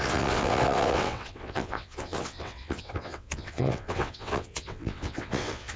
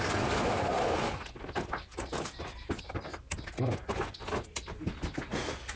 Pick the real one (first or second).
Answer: second